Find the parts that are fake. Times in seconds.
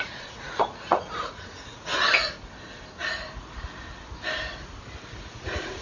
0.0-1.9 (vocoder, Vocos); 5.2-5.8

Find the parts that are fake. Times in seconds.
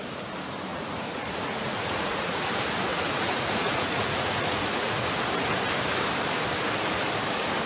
0.7-2.5 (vocoder, Vocos); 2.9-5.1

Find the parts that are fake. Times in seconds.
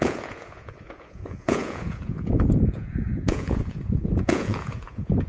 0.0-5.3 (vocoder, Vocos)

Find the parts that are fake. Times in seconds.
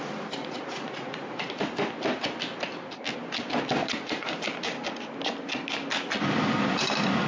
0.4-1.4 (vocoder, Vocos); 3.8-4.4